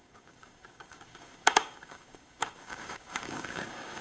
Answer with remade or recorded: remade